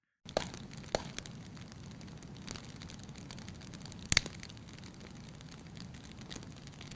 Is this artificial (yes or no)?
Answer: no